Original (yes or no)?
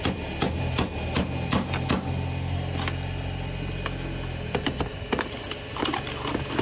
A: yes